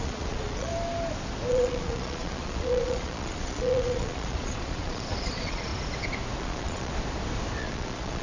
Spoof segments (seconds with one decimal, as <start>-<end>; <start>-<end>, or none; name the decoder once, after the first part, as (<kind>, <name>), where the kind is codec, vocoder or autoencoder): 0.0-0.7 (vocoder, Vocos); 1.5-5.7; 6.4-6.9; 7.6-8.2